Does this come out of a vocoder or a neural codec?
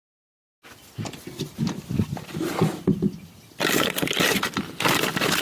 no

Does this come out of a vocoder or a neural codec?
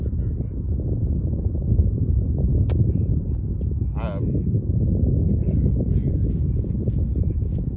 no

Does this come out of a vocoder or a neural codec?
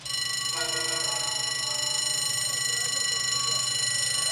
no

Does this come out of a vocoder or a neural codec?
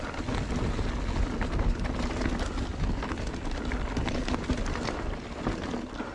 no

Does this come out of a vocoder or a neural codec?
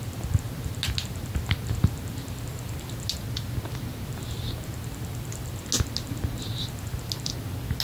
no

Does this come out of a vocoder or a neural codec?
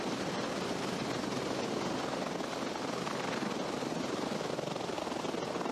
no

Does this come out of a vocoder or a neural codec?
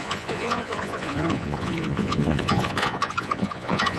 yes